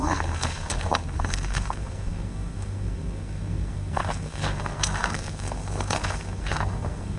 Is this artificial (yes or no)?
yes